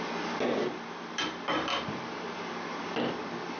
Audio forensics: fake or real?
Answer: real